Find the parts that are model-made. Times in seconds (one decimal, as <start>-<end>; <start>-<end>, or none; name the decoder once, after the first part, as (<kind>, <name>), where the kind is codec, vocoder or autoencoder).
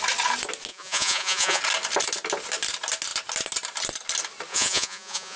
0.7-1.6 (vocoder, Vocos); 4.5-5.4